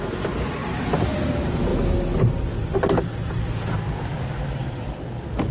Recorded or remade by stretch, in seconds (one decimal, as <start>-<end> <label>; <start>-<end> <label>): 0.0-5.5 recorded